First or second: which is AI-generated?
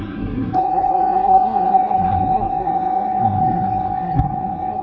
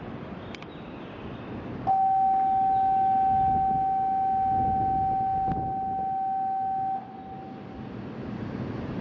first